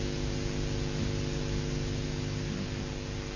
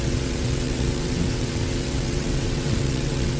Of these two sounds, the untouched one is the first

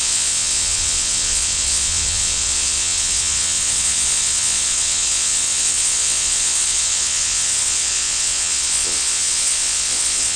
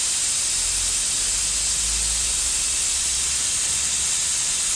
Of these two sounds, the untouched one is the second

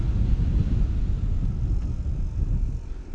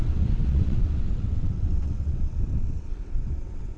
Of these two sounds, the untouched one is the first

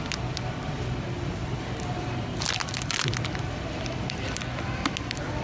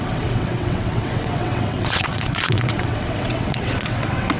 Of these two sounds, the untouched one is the first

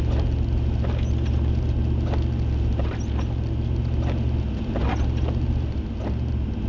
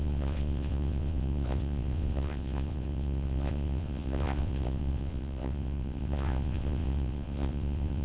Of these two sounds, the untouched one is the first